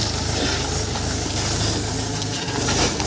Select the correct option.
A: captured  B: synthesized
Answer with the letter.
A